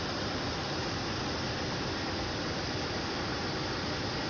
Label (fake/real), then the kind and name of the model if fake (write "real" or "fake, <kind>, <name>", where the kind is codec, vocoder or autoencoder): real